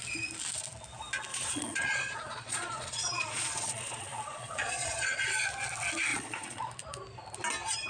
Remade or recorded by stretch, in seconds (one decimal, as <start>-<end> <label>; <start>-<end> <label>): 0.0-1.3 recorded; 1.3-5.2 remade; 5.2-6.1 recorded; 6.1-6.6 remade; 6.6-7.9 recorded